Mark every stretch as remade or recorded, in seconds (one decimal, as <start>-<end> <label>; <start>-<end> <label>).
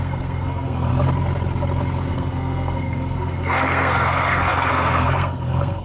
0.0-0.9 remade; 0.9-2.1 recorded; 2.1-5.8 remade